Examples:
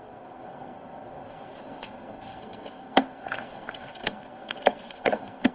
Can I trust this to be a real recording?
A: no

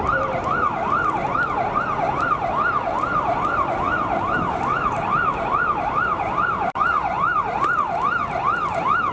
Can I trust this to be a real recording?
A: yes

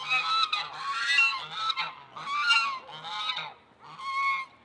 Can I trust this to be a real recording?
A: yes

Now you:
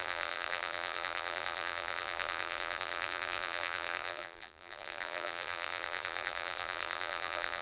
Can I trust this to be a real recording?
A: no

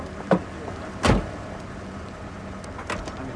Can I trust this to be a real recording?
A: yes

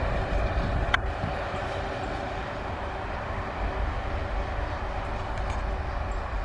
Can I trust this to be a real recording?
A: yes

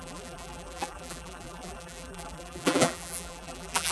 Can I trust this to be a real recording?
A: no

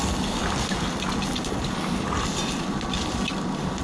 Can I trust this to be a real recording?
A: yes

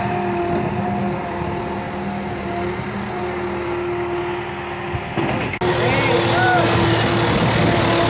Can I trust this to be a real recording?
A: yes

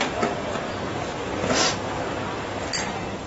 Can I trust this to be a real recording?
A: yes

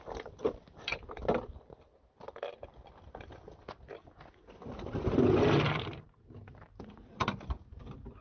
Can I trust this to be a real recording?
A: yes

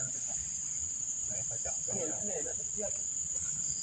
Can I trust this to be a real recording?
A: no